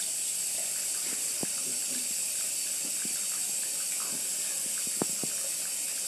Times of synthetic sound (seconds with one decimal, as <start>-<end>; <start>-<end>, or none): none